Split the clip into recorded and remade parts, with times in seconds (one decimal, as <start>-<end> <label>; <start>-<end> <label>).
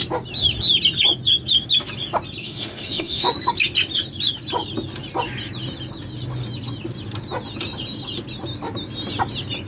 0.0-2.4 recorded; 2.4-3.3 remade; 3.3-9.7 recorded